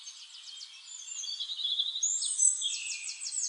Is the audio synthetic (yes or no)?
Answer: no